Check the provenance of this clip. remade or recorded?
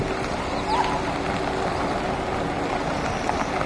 recorded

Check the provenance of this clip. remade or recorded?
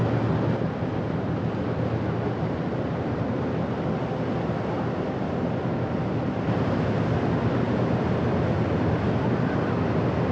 recorded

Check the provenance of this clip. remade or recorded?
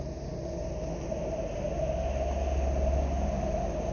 recorded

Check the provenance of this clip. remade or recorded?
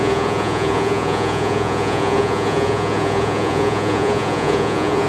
remade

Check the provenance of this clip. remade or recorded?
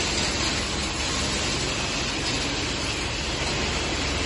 recorded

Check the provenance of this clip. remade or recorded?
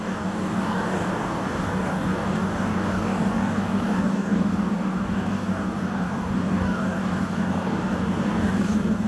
remade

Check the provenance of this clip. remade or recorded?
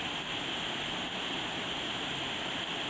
recorded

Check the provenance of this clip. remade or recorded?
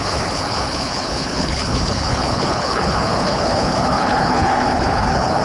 remade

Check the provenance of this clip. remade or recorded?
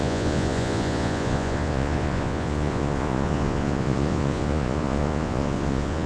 remade